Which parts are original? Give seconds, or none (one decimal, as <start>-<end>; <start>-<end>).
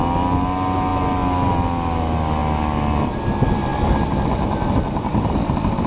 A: 0.0-5.9